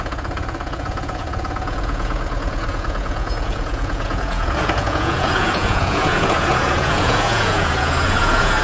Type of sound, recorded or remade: remade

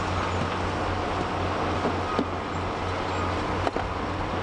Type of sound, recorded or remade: recorded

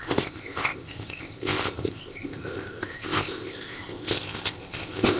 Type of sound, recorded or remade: remade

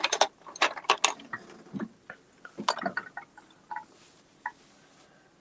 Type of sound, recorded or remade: recorded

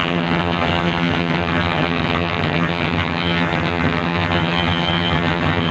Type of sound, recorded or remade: remade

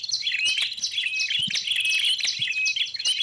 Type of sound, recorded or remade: recorded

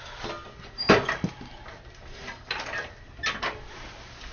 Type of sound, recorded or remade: recorded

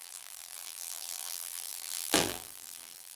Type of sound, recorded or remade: remade